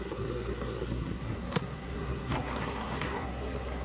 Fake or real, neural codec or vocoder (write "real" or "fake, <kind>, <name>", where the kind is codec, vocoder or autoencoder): fake, codec, SNAC